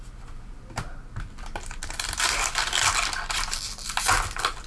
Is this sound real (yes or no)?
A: yes